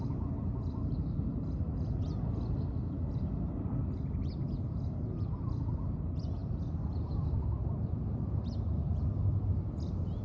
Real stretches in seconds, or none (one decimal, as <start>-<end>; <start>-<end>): 0.0-10.2